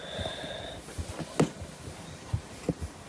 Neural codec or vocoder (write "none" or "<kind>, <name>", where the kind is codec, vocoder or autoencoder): none